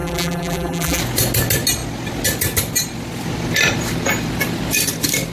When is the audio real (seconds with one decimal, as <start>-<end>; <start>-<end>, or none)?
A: 1.0-5.3